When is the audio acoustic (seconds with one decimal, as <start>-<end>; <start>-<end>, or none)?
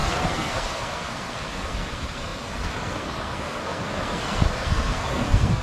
none